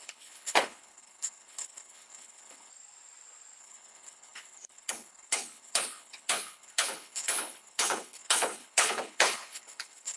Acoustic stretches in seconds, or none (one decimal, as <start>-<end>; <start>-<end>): 2.7-3.6